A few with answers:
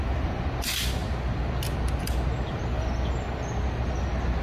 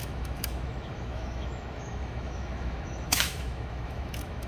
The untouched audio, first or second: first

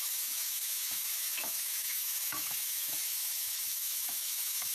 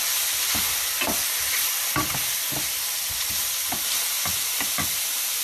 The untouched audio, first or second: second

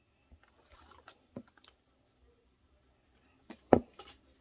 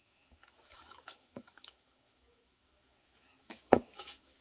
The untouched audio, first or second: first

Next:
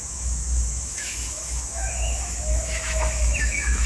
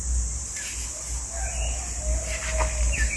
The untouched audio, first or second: second